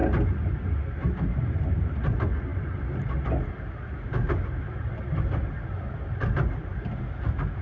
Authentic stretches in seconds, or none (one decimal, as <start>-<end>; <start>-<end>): 0.0-7.6